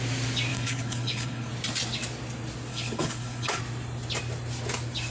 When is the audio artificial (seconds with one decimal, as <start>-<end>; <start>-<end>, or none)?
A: 0.5-1.5; 2.7-3.6